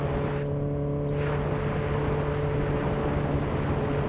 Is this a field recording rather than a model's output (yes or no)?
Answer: yes